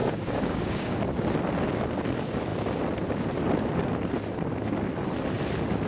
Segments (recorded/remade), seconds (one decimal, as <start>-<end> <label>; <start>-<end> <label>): 0.0-1.0 remade; 1.0-5.9 recorded